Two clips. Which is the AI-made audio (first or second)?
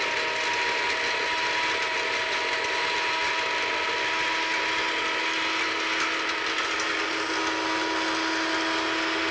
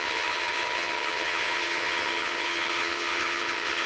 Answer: second